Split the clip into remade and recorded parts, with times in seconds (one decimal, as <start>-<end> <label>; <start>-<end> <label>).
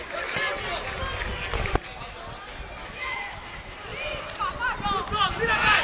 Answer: 0.0-2.8 recorded; 2.8-3.5 remade; 3.5-5.8 recorded